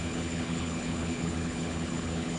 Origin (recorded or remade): remade